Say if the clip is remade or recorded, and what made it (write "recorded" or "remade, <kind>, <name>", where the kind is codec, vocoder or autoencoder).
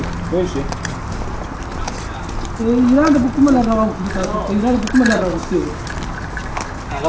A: recorded